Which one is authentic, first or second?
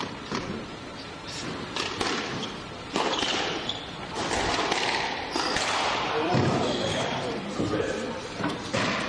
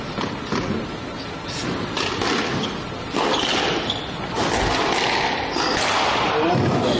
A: second